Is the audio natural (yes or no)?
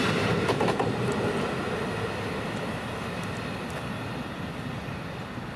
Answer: yes